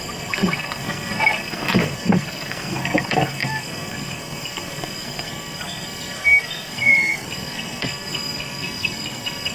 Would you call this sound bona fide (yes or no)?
no